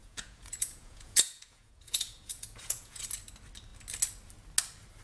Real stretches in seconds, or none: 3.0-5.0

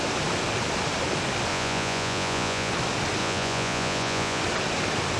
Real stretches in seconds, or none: 0.0-1.5; 2.7-3.2; 4.4-5.2